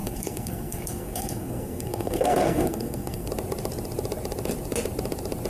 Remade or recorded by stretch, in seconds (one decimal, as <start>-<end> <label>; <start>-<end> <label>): 0.0-3.3 remade; 3.3-5.5 recorded